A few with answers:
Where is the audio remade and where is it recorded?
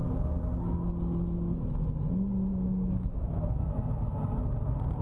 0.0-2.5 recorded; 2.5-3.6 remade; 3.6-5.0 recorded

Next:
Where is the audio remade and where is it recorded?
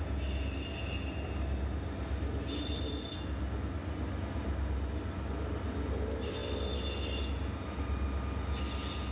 0.0-9.1 recorded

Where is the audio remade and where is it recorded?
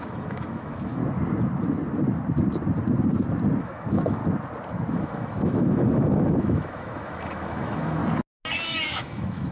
0.0-1.0 remade; 1.0-3.6 recorded; 3.6-4.2 remade; 4.2-4.9 recorded; 4.9-8.0 remade; 8.0-8.5 recorded; 8.5-9.5 remade